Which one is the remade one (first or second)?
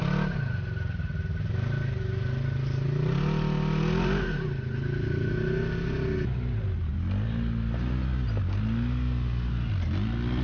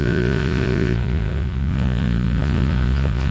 second